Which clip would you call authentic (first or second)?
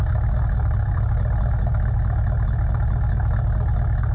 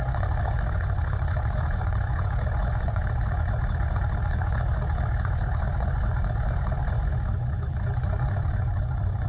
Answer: first